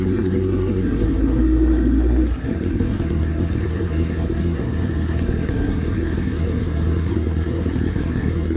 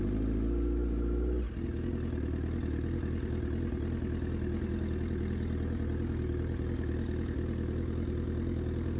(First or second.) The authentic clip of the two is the second